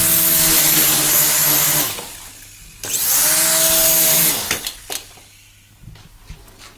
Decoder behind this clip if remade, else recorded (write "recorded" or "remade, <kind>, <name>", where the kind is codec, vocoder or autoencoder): recorded